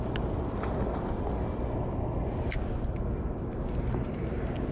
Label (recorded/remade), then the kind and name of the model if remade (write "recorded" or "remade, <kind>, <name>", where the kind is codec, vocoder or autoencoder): recorded